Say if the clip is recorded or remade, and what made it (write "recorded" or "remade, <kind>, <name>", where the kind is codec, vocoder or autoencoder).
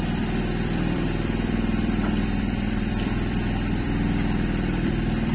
remade, vocoder, BigVGAN v2